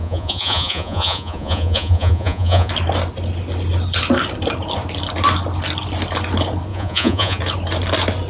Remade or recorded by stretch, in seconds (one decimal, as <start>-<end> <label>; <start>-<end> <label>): 0.0-2.7 remade; 2.7-6.7 recorded; 6.7-7.4 remade; 7.4-8.3 recorded